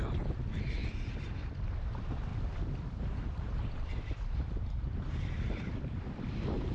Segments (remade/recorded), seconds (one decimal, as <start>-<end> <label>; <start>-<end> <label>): 0.0-2.3 recorded; 2.3-6.3 remade; 6.3-6.7 recorded